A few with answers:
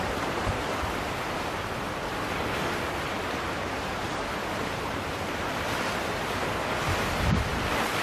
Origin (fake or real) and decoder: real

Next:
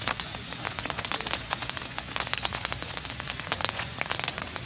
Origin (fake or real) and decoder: fake, vocoder, Vocos